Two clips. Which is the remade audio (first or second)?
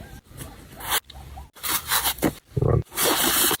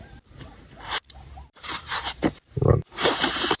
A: second